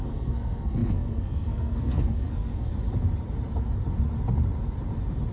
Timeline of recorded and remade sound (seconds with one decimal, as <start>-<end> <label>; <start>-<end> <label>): 0.0-2.7 remade; 2.7-5.3 recorded